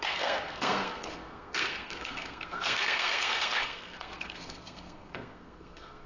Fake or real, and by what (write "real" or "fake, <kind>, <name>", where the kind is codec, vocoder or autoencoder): fake, codec, SNAC